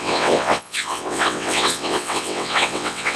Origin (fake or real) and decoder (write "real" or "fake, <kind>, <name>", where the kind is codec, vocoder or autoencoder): fake, vocoder, WaveNeXt